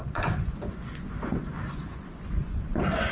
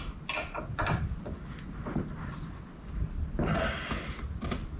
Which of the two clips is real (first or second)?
second